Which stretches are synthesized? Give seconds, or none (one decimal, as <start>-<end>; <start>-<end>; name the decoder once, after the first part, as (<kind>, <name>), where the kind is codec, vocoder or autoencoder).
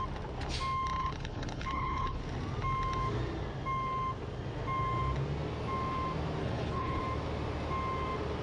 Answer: 1.0-2.2 (codec, HILCodec); 6.4-7.0